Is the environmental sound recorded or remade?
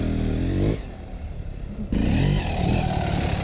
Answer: recorded